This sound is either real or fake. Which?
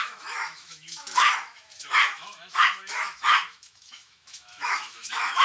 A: fake